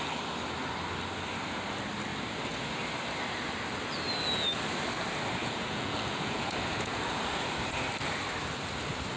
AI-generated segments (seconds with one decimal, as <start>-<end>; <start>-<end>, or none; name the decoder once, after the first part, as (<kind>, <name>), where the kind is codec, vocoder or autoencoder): 5.4-7.2 (vocoder, Vocos)